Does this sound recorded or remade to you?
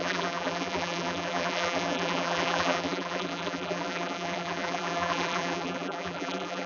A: remade